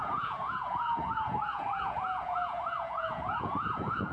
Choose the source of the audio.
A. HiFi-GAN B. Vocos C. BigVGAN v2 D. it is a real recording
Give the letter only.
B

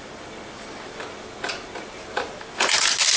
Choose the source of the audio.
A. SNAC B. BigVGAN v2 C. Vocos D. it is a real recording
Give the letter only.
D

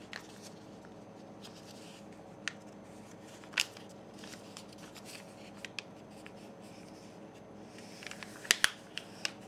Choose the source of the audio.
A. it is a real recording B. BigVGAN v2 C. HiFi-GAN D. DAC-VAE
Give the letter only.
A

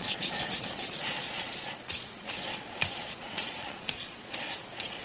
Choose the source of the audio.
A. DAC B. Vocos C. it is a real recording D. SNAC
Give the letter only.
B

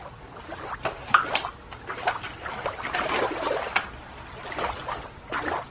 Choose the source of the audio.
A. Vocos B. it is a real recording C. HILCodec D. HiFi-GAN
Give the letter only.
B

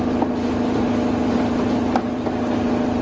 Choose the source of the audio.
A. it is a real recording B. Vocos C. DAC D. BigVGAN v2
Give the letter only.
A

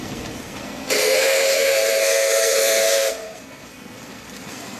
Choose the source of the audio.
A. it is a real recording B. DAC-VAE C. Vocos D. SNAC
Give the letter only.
D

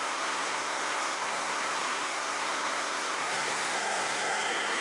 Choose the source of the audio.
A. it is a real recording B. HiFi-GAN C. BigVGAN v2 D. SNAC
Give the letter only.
D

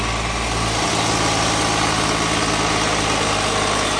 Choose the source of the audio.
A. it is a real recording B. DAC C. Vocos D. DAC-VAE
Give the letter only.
A